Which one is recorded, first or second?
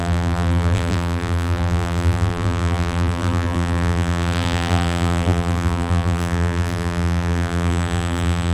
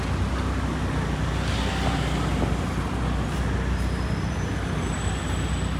second